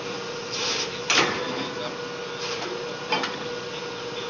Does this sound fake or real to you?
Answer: real